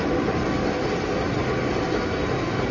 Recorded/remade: recorded